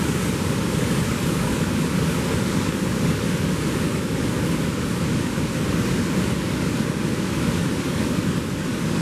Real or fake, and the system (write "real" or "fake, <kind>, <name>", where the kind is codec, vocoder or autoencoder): fake, codec, DAC